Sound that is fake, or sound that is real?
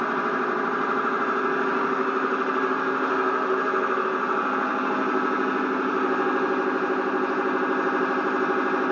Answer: real